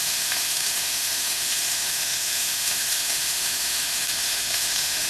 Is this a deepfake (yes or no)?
yes